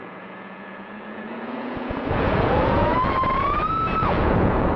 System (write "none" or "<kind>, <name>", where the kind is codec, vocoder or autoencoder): vocoder, Vocos